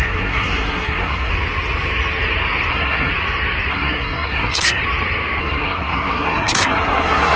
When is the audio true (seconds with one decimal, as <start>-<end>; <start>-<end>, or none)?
1.3-2.7; 3.1-3.7; 4.8-5.4